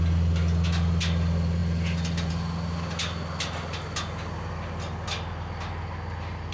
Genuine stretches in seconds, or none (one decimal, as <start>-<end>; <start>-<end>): 0.0-6.5